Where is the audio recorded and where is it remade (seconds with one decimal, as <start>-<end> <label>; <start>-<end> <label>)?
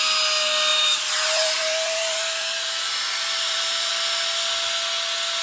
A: 0.0-0.7 recorded; 0.7-3.9 remade; 3.9-5.4 recorded